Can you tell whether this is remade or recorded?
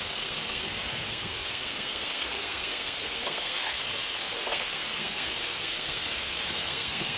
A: remade